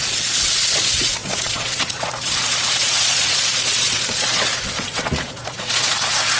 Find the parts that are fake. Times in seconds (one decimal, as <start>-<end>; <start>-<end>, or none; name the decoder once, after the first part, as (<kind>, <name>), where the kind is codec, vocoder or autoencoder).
0.0-6.4 (vocoder, Vocos)